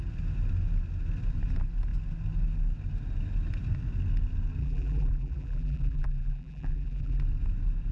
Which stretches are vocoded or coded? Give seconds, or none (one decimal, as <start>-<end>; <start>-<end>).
4.6-7.2